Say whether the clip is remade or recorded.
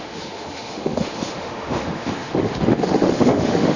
remade